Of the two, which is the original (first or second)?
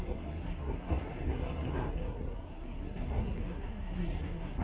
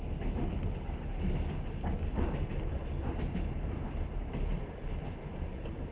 second